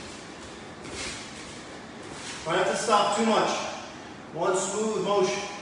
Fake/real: real